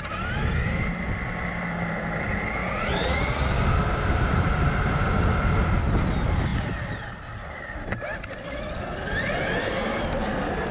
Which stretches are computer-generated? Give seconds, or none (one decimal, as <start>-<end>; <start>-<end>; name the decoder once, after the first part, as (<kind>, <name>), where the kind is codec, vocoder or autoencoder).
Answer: 2.6-3.5 (vocoder, Vocos)